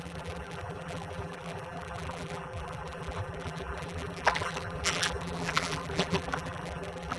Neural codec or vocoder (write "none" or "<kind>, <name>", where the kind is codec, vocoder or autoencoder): vocoder, BigVGAN v2